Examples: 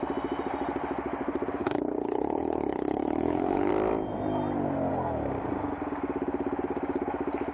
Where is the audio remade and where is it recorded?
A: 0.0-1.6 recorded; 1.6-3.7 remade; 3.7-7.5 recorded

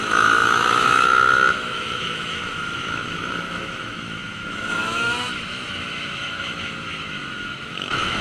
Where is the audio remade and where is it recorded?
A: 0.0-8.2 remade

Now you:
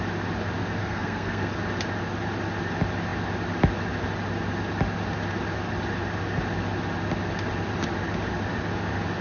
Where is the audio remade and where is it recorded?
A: 0.0-0.8 recorded; 0.8-1.5 remade; 1.5-9.2 recorded